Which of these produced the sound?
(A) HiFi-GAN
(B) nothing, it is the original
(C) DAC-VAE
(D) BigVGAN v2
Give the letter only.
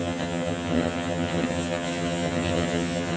A